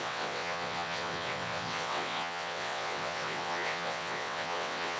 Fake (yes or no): yes